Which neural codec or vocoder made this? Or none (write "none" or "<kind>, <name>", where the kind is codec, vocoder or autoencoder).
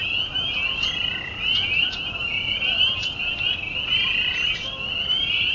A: none